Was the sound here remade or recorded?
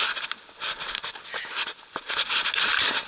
recorded